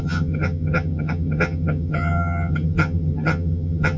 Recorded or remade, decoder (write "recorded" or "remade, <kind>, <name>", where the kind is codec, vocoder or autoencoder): remade, vocoder, HiFi-GAN